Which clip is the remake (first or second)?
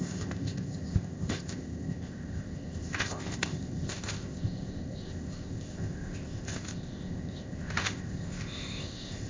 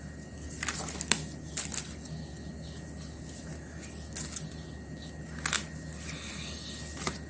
first